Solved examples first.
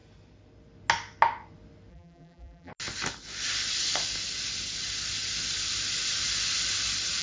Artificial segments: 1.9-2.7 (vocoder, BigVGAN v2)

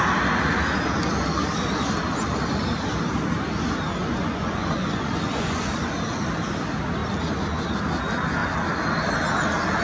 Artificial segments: 4.0-5.7 (vocoder, Vocos)

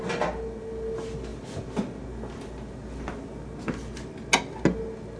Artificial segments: none